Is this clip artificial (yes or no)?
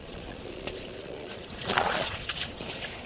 yes